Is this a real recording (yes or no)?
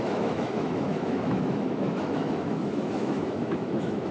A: no